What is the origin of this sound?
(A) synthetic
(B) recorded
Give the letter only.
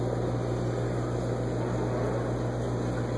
B